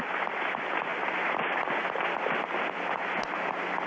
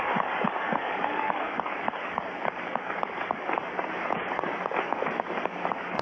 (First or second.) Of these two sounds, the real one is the first